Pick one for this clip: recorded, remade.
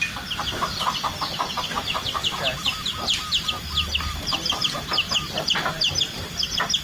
recorded